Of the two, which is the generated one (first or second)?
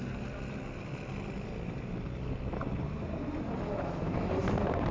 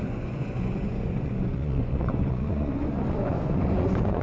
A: second